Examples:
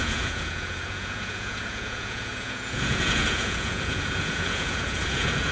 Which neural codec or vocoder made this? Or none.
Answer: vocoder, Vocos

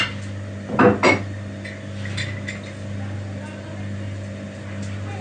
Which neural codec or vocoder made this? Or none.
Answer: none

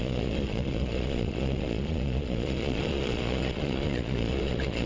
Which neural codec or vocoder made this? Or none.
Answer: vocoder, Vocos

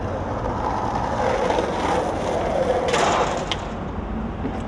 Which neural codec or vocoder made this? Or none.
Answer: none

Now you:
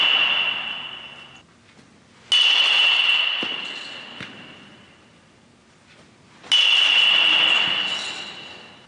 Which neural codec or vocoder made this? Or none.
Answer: none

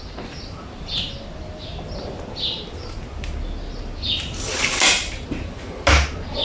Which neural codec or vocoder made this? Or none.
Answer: none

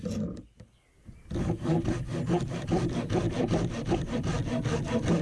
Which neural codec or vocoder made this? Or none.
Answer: none